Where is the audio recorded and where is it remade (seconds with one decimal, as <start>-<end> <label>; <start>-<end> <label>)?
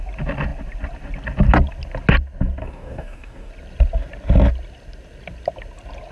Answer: 0.0-2.6 recorded; 2.6-3.5 remade; 3.5-6.1 recorded